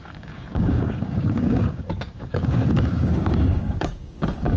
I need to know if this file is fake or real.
fake